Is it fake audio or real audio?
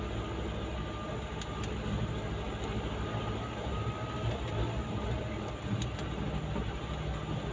real